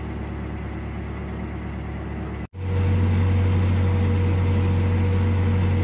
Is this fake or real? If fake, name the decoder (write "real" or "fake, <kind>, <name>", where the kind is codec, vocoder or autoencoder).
real